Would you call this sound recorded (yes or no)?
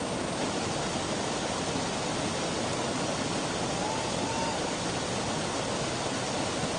yes